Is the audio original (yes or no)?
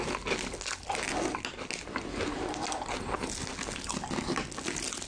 yes